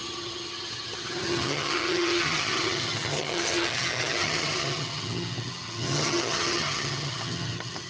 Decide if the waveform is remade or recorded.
remade